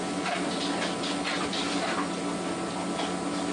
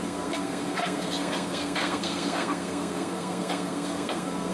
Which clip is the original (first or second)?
first